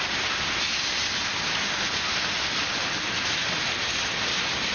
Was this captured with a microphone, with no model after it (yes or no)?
yes